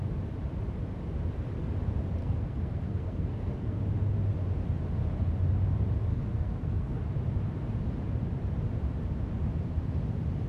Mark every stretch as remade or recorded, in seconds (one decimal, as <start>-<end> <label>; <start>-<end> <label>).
0.0-2.2 recorded; 2.2-3.8 remade; 3.8-6.1 recorded; 6.1-7.0 remade; 7.0-10.5 recorded